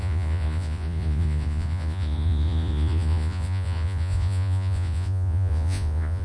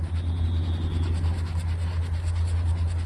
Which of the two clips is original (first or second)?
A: second